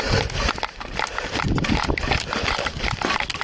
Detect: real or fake real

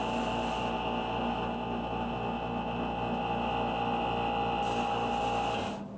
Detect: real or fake real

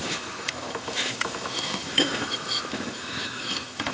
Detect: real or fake fake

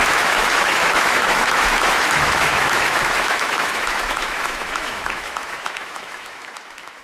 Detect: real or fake fake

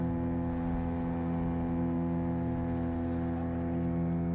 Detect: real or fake real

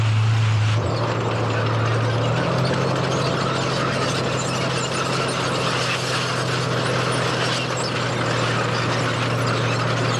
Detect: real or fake real